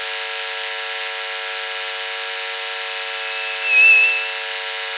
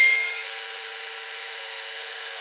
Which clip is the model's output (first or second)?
second